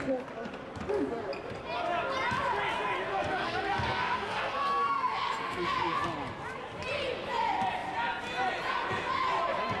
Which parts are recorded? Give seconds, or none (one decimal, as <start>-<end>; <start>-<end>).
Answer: 0.0-3.1; 6.0-9.8